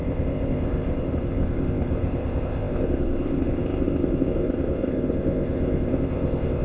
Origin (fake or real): fake